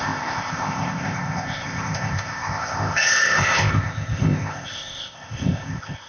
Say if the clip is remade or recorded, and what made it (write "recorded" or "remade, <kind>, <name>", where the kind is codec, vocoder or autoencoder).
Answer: remade, codec, ZipCodec